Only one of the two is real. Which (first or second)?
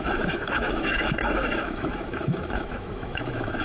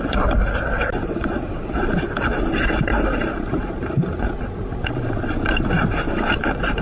second